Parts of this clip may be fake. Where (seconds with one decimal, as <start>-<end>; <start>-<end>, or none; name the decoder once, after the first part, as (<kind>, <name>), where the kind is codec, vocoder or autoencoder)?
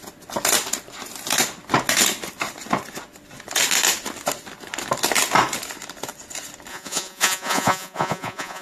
6.7-8.6 (vocoder, Vocos)